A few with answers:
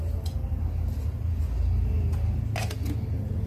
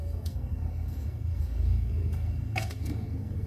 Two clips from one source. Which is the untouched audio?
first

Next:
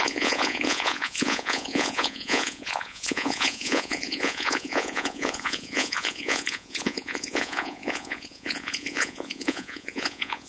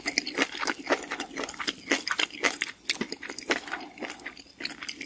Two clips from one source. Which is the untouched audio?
second